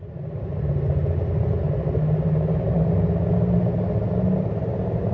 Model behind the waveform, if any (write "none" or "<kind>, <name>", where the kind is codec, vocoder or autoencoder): none